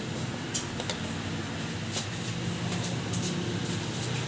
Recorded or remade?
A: recorded